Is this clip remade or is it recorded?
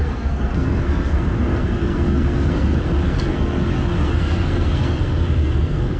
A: remade